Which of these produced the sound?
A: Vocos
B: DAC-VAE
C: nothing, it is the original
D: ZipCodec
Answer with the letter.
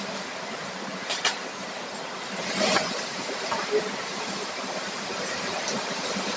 C